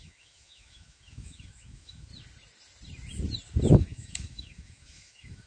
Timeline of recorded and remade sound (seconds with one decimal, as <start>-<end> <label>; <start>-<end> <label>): 0.0-2.1 remade; 2.1-3.7 recorded; 3.7-5.5 remade